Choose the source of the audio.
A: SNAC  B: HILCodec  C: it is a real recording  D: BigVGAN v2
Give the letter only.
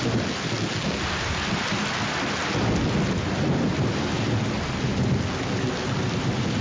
C